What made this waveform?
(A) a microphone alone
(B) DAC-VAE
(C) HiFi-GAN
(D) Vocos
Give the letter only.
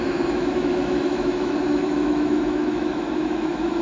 B